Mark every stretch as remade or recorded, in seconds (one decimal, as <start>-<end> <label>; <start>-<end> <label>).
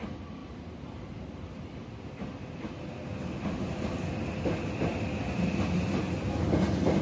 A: 0.0-7.0 recorded